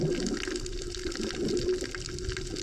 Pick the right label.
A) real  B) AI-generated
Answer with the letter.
A